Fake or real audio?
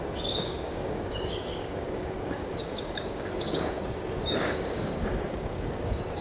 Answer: fake